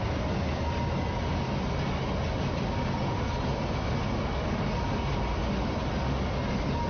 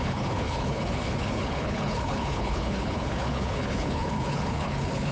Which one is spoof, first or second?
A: second